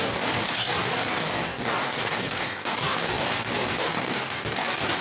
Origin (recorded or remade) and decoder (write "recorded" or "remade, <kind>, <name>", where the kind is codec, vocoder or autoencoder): remade, codec, DAC